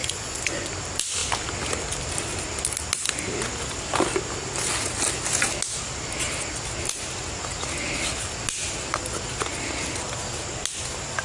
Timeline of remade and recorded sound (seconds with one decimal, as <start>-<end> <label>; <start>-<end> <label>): 0.0-0.7 remade; 0.7-11.2 recorded

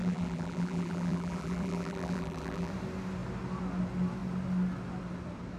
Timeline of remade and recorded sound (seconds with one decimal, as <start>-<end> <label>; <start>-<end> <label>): 0.0-2.7 remade; 2.7-5.6 recorded